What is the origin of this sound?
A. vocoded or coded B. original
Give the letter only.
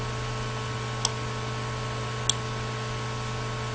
B